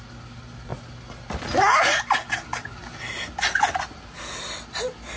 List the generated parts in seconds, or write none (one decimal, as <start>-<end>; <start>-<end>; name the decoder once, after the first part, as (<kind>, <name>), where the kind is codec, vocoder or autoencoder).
none